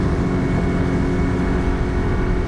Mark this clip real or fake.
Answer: real